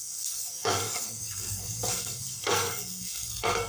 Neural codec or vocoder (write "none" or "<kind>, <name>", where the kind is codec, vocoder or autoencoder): codec, SNAC